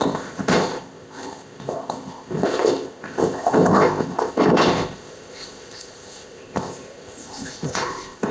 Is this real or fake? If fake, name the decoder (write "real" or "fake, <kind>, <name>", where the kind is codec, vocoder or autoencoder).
fake, codec, ZipCodec